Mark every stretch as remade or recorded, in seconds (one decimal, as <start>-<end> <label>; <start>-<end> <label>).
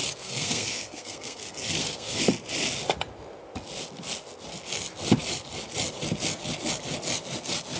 0.0-2.2 remade; 2.2-7.8 recorded